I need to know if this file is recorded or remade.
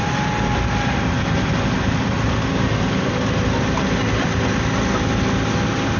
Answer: recorded